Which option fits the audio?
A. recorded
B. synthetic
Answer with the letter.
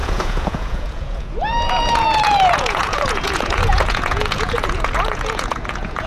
B